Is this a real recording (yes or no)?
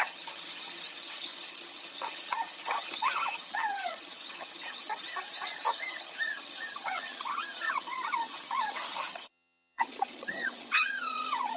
no